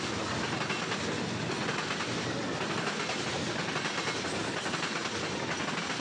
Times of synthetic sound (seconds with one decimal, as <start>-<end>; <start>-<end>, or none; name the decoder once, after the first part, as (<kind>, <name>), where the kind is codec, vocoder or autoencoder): none